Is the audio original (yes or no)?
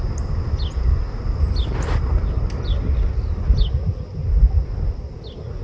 yes